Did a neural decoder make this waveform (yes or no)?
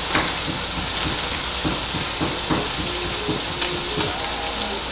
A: no